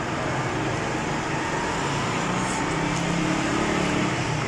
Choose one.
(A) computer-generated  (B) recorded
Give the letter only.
B